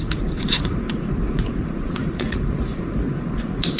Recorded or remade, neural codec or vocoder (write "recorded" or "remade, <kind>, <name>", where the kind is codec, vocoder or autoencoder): remade, vocoder, Vocos